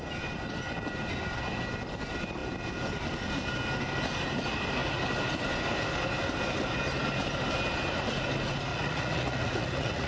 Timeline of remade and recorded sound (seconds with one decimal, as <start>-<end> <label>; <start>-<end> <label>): 0.0-8.7 recorded; 8.7-10.1 remade